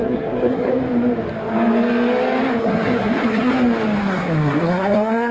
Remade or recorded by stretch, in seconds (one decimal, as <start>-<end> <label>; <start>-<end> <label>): 0.0-0.7 remade; 0.7-2.6 recorded; 2.6-3.5 remade; 3.5-4.0 recorded; 4.0-5.3 remade